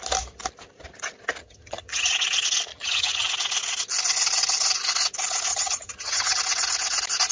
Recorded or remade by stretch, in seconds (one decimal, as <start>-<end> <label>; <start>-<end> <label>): 0.0-1.4 recorded; 1.4-2.1 remade; 2.1-2.7 recorded; 2.7-3.3 remade; 3.3-5.5 recorded; 5.5-6.4 remade; 6.4-7.3 recorded